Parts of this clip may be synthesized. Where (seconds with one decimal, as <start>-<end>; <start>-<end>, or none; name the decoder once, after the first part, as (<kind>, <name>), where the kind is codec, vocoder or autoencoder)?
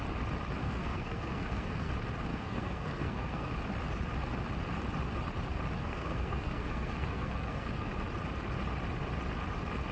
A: 0.6-1.9 (codec, SNAC); 2.3-3.5; 5.8-7.9